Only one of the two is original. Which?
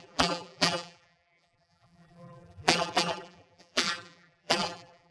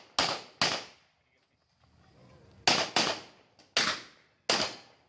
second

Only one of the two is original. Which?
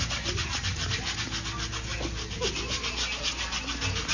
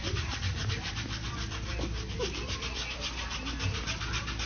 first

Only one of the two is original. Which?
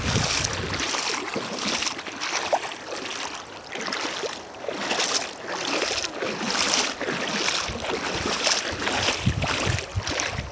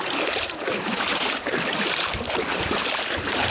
first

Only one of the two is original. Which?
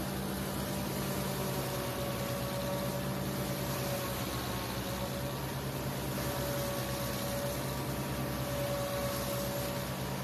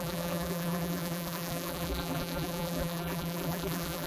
first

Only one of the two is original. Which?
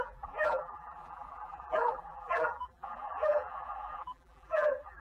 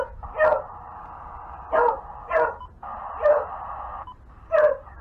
second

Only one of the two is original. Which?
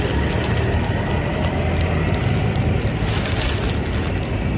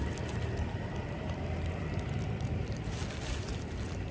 first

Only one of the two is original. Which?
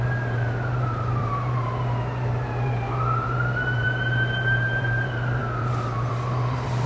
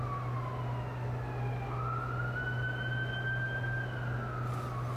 second